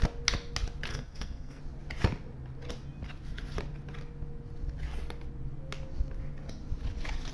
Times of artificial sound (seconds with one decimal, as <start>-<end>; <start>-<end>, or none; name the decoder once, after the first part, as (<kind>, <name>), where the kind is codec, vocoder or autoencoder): 0.9-1.6 (codec, SNAC)